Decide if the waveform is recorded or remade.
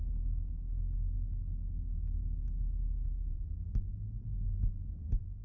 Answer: recorded